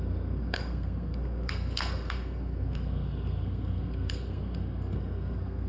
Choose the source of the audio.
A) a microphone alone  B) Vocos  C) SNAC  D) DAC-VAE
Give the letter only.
C